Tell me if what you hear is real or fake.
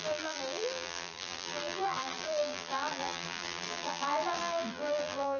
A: fake